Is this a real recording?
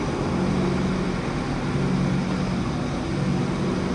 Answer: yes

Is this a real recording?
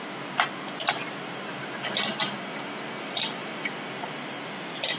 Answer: yes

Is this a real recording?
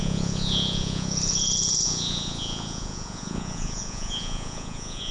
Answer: no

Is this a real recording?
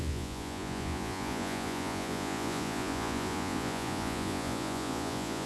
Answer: no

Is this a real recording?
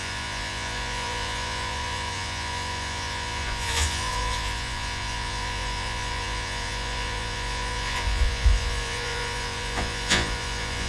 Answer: no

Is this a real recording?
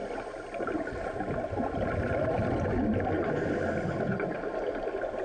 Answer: yes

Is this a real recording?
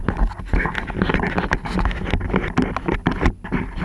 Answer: yes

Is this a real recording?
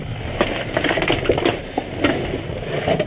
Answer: yes